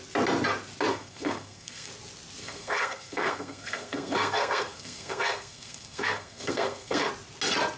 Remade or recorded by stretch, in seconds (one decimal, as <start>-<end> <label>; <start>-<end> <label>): 0.0-0.9 recorded; 0.9-1.9 remade; 1.9-2.4 recorded; 2.4-7.1 remade; 7.1-7.8 recorded